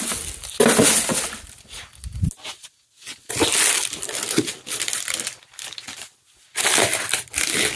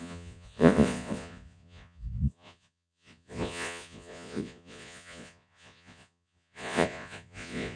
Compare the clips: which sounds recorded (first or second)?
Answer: first